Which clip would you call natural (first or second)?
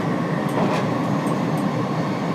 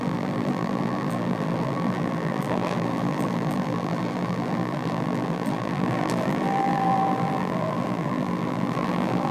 first